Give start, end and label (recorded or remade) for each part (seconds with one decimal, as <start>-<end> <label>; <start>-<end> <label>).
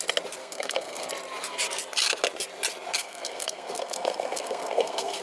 0.0-0.4 recorded; 0.4-1.1 remade; 1.1-2.9 recorded; 2.9-5.2 remade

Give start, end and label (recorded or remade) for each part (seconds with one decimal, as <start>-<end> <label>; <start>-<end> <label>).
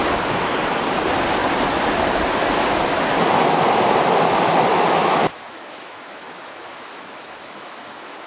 0.0-0.6 remade; 0.6-4.7 recorded; 4.7-8.3 remade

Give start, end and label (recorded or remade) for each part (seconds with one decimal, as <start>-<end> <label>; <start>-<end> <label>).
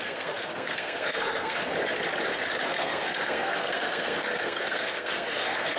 0.0-1.7 remade; 1.7-2.6 recorded; 2.6-5.8 remade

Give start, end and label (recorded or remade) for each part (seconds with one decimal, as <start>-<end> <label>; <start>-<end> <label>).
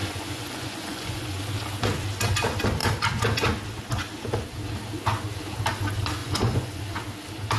0.0-1.4 remade; 1.4-6.2 recorded; 6.2-6.8 remade; 6.8-7.6 recorded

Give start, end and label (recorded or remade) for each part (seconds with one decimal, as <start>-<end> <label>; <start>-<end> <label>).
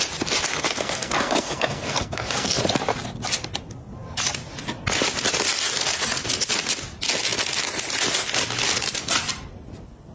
0.0-0.5 recorded; 0.5-2.6 remade; 2.6-10.1 recorded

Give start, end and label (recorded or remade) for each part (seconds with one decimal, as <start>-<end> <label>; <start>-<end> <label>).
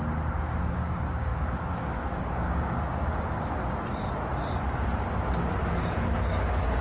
0.0-0.6 recorded; 0.6-3.6 remade; 3.6-6.2 recorded; 6.2-6.8 remade